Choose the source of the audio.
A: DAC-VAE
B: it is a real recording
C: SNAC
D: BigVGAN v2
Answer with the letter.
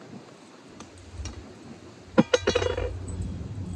B